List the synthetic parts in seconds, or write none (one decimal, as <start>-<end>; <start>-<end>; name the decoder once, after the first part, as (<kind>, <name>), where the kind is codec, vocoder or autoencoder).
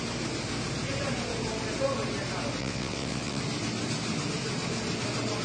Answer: 2.6-3.4 (vocoder, WaveNeXt)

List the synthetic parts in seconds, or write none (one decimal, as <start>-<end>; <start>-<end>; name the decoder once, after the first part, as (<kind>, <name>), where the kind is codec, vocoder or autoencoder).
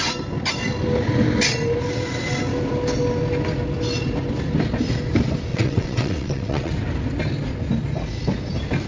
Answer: 5.5-6.7 (vocoder, WaveNeXt)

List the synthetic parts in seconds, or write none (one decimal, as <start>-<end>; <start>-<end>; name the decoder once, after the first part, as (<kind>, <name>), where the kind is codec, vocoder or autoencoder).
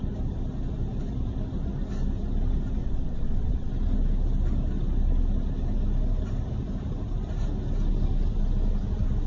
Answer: 2.8-3.7 (vocoder, WaveNeXt)